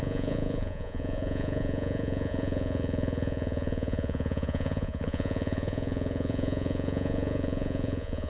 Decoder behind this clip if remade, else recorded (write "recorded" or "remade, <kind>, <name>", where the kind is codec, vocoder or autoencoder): remade, vocoder, Vocos